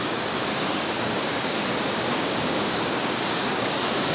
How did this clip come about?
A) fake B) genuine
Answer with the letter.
A